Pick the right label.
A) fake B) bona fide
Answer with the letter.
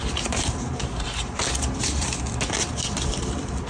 B